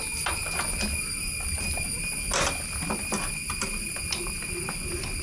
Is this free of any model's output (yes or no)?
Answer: yes